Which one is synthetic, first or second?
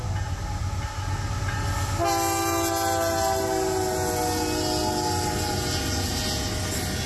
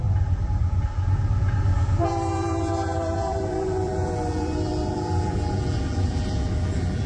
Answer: second